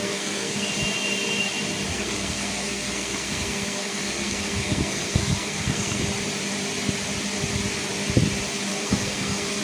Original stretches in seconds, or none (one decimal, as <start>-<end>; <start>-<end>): 0.7-1.9; 6.0-8.7